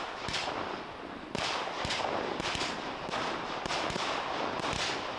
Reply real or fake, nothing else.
fake